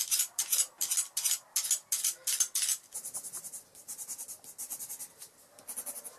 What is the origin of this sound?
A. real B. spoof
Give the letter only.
A